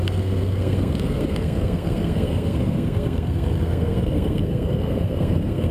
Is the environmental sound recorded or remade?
remade